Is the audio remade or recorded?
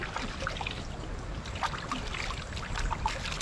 recorded